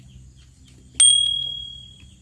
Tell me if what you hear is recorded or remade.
recorded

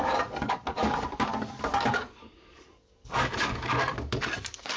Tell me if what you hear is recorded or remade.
remade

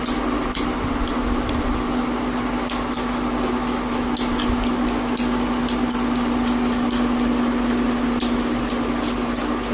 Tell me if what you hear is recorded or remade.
recorded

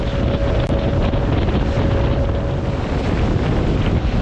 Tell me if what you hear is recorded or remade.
recorded